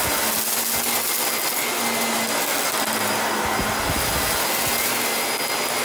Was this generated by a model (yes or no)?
no